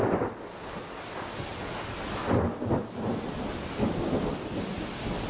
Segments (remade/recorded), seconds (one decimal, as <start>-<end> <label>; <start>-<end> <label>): 0.0-5.3 recorded